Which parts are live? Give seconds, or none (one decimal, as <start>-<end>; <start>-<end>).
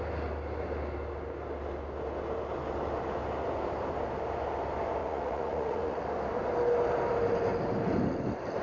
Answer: 0.0-5.0; 6.0-8.6